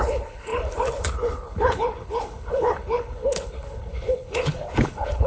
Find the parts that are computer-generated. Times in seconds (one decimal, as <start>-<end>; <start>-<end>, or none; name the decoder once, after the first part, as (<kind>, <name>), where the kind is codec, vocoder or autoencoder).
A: 0.0-5.3 (codec, HILCodec)

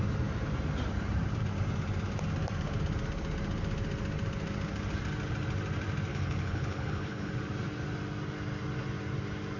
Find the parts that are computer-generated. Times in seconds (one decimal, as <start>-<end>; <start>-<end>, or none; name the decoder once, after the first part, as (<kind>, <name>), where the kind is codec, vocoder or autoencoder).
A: 6.1-7.3 (codec, HILCodec)

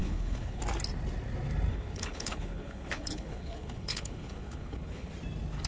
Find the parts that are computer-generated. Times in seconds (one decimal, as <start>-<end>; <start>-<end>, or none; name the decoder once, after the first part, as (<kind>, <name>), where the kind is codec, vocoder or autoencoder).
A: 0.0-0.6 (codec, HILCodec); 1.7-5.1

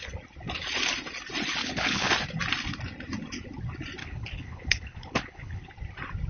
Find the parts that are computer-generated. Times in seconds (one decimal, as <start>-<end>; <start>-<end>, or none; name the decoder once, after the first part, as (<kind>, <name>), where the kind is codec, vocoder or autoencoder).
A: 1.6-2.1 (codec, HILCodec); 4.0-5.7

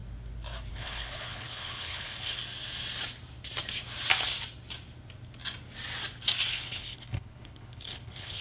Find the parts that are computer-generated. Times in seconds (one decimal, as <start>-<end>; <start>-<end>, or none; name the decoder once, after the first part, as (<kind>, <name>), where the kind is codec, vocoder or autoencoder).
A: 0.7-2.4 (codec, HILCodec); 6.5-8.4

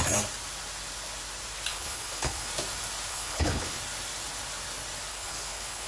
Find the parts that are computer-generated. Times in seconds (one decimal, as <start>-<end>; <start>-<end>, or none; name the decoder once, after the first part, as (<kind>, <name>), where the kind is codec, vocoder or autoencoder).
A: 1.7-2.5 (codec, HILCodec); 3.1-3.8; 5.1-5.9

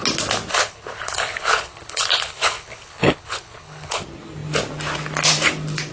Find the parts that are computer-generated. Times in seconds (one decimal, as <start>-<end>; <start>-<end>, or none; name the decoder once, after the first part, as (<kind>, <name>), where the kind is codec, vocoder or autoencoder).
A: 0.5-4.0 (codec, HILCodec)